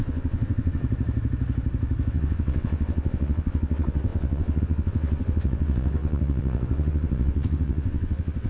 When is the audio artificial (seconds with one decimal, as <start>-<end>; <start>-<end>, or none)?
0.0-0.8; 2.1-8.5